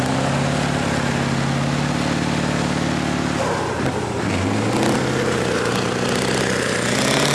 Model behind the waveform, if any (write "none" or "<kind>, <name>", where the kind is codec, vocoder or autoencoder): none